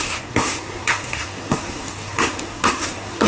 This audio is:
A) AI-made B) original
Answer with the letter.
A